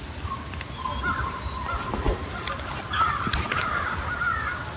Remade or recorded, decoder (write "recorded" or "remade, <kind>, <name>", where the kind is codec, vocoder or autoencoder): recorded